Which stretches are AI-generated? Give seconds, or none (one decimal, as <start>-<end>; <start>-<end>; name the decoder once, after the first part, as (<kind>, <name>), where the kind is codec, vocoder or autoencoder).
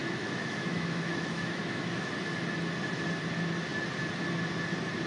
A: 0.0-2.1 (autoencoder, DAC-VAE)